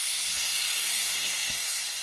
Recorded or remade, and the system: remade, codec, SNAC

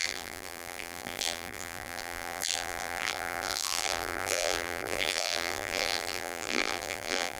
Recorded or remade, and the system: remade, vocoder, BigVGAN v2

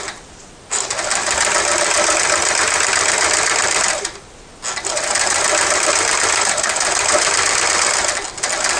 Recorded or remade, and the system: recorded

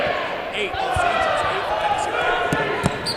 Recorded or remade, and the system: recorded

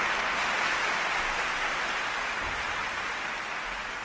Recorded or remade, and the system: recorded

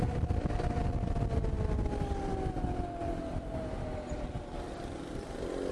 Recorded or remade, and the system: recorded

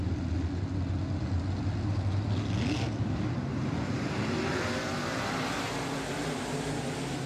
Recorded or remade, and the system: recorded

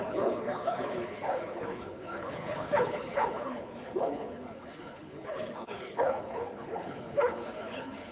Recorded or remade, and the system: remade, codec, HILCodec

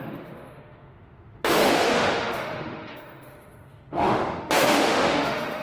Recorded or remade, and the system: remade, autoencoder, DAC-VAE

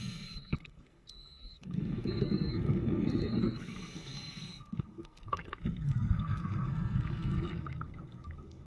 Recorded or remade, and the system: remade, codec, SNAC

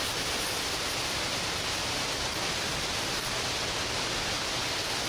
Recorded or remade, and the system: recorded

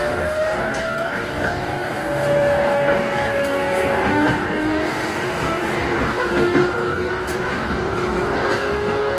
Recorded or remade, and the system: remade, codec, DAC